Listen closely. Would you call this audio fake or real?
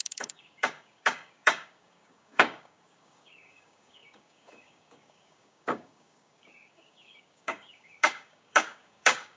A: fake